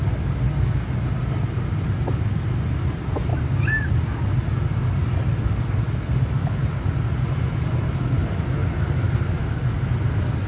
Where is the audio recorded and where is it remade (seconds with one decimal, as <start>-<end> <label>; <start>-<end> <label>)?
0.0-10.5 recorded